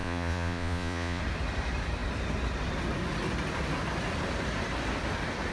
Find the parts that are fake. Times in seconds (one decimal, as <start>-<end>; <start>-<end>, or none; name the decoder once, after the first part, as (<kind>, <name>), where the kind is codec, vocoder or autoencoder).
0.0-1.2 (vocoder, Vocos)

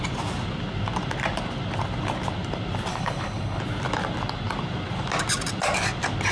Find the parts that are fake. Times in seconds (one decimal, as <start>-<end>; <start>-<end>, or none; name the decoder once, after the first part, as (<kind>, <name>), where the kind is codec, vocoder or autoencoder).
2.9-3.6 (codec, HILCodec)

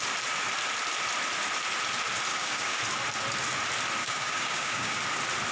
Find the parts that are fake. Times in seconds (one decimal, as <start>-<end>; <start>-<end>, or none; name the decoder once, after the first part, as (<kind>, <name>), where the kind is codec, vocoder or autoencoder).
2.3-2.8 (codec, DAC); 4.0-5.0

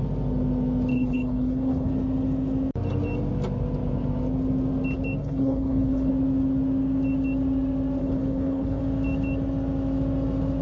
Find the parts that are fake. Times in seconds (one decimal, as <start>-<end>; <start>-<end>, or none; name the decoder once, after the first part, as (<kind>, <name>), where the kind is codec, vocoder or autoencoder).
0.9-1.9 (codec, HILCodec); 5.2-6.1; 8.0-8.8